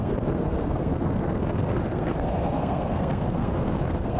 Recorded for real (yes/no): no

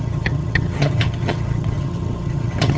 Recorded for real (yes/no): no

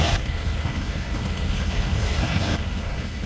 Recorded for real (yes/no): no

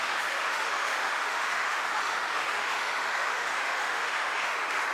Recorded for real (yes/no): no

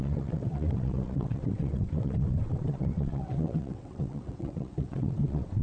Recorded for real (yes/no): no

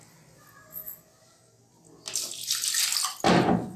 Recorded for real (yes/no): yes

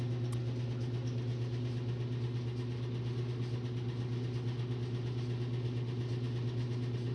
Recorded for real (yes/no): yes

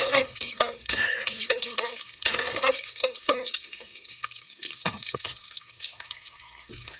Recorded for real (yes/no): no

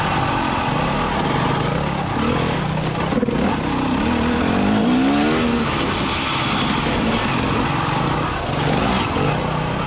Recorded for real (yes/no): yes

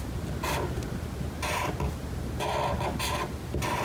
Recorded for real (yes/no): yes